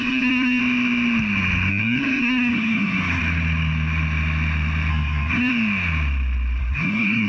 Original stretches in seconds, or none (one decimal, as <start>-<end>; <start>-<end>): 0.6-1.7; 3.2-4.9; 5.5-6.6